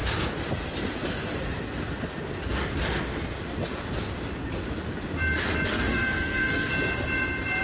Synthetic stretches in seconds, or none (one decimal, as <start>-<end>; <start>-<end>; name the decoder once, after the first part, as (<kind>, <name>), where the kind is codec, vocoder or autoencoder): 5.7-6.7 (codec, SNAC)